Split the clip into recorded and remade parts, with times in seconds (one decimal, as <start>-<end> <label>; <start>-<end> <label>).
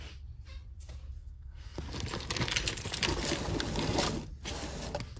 0.0-1.2 recorded; 1.2-1.8 remade; 1.8-5.2 recorded